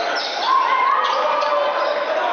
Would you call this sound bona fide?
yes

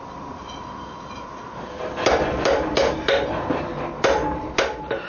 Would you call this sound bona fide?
yes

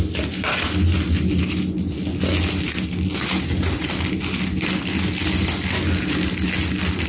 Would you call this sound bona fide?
yes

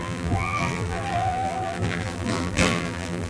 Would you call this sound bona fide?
no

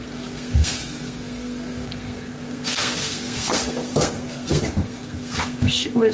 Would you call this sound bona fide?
no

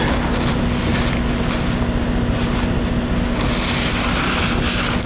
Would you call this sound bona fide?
yes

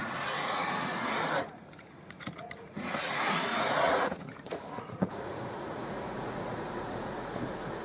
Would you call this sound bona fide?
no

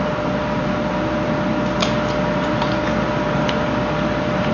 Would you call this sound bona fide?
yes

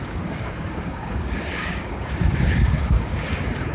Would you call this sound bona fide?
no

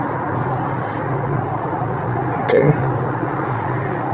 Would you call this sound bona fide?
no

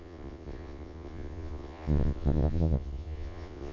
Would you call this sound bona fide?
no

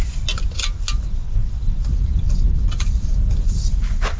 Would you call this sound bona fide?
yes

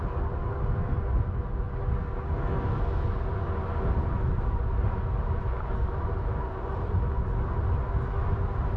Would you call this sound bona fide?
yes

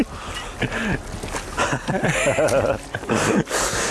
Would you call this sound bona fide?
yes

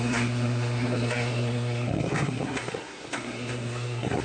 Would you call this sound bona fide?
no